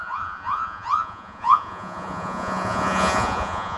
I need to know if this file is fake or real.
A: fake